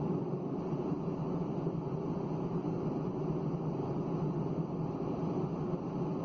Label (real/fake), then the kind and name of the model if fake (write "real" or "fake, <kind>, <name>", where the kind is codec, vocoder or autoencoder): real